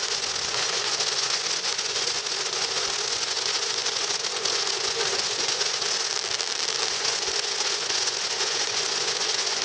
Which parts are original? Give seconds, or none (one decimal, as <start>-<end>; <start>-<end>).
6.1-6.9